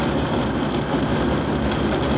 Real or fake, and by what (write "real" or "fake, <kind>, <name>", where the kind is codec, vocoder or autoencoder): real